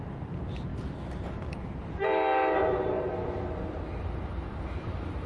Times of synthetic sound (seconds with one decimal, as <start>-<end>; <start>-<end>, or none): none